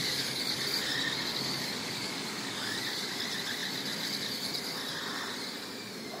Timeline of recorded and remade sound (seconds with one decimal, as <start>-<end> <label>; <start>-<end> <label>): 0.0-0.6 remade; 0.6-1.3 recorded; 1.3-3.2 remade; 3.2-6.2 recorded